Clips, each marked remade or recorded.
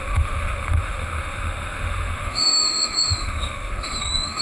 remade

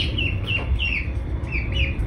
remade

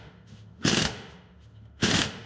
remade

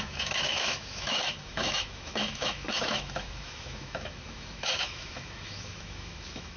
remade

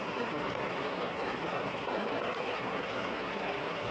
remade